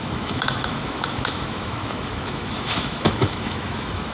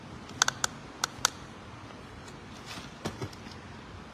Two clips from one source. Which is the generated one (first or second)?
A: first